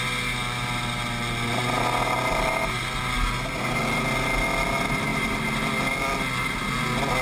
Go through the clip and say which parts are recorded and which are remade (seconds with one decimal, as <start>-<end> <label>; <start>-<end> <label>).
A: 0.0-2.3 recorded; 2.3-2.8 remade; 2.8-7.2 recorded